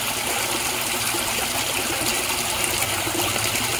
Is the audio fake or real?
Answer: real